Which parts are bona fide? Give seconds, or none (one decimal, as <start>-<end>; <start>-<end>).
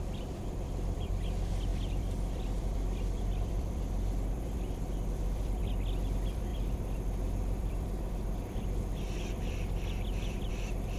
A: none